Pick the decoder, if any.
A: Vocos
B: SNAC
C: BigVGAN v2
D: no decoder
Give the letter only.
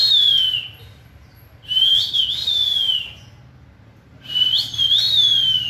D